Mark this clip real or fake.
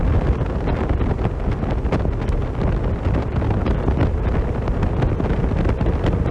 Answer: real